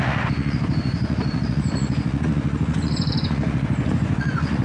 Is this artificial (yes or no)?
yes